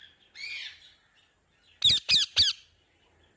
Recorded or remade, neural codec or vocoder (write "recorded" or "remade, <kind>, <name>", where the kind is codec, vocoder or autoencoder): recorded